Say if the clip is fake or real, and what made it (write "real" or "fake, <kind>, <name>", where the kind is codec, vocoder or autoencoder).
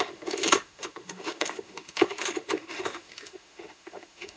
fake, autoencoder, DAC-VAE